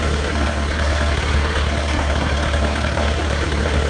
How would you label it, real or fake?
fake